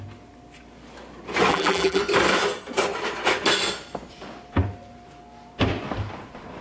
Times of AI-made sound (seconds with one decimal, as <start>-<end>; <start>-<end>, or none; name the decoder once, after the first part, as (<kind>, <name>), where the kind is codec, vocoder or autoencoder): 1.5-2.0 (vocoder, BigVGAN v2)